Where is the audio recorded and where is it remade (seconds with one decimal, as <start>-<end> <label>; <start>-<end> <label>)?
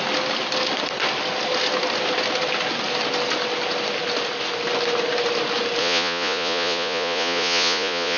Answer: 0.0-5.8 recorded; 5.8-8.2 remade